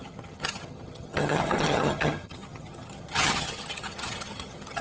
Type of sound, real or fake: fake